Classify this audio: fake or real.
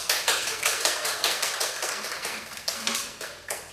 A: fake